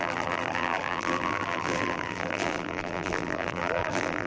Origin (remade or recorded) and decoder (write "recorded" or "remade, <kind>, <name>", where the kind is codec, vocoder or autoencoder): remade, vocoder, BigVGAN v2